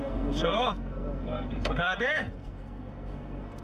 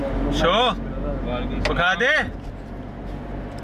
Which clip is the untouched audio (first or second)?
second